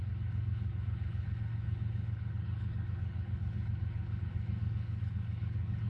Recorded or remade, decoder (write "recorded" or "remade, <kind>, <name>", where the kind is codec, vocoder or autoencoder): remade, codec, HILCodec